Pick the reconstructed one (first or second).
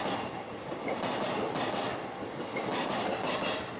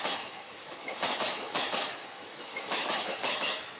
second